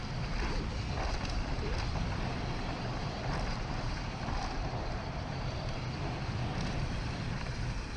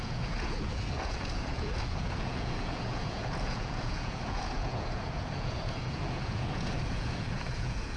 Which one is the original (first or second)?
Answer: first